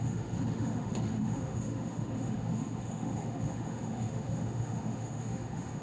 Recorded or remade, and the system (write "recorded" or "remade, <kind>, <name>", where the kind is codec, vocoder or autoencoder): remade, autoencoder, DAC-VAE